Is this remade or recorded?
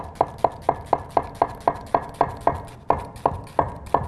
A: recorded